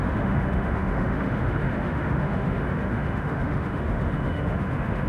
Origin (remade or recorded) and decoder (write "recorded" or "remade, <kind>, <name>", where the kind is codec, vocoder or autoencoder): remade, autoencoder, DAC-VAE